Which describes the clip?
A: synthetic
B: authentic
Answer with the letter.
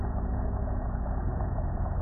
A